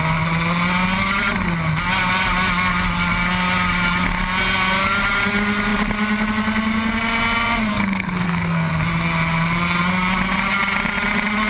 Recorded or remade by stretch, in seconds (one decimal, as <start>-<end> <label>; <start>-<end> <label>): 0.0-7.7 recorded; 7.7-8.7 remade; 8.7-11.5 recorded